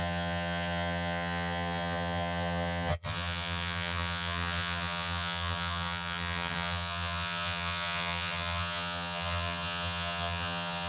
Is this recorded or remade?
remade